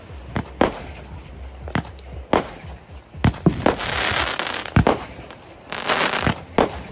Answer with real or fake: real